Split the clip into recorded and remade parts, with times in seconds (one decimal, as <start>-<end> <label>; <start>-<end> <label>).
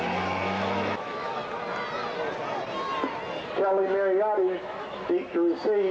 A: 0.0-1.4 remade; 1.4-4.4 recorded; 4.4-5.9 remade